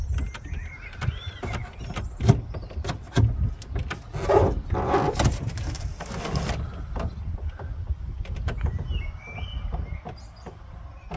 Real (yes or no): yes